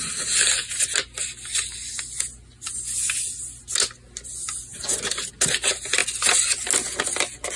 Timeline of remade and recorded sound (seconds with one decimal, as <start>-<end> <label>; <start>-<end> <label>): 0.0-7.6 recorded